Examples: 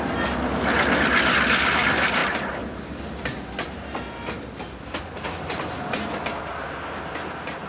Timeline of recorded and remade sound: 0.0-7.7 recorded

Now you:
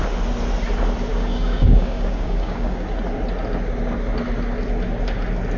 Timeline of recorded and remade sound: 0.0-1.1 recorded; 1.1-2.7 remade; 2.7-5.6 recorded

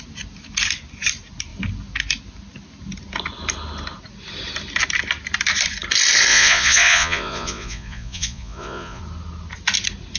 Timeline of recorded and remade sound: 0.0-6.3 recorded; 6.3-9.0 remade; 9.0-10.2 recorded

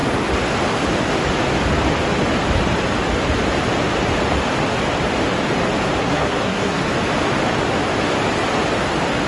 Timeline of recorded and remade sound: 0.0-6.0 recorded; 6.0-6.8 remade; 6.8-9.3 recorded

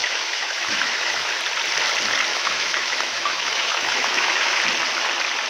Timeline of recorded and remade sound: 0.0-1.4 remade; 1.4-2.3 recorded; 2.3-4.6 remade; 4.6-5.5 recorded